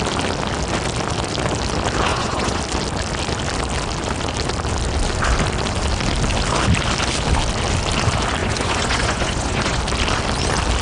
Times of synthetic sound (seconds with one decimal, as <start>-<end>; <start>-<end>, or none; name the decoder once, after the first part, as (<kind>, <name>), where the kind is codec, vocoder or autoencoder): 2.1-2.6 (vocoder, Vocos); 8.4-9.8